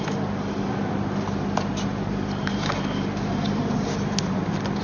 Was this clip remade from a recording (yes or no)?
no